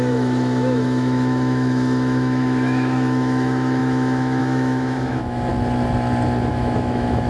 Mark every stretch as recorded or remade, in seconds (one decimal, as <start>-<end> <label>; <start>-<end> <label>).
0.0-5.5 remade; 5.5-6.5 recorded; 6.5-7.3 remade